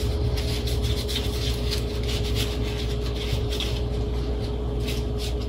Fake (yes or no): no